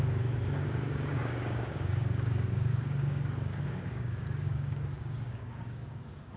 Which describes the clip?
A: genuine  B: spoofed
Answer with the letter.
B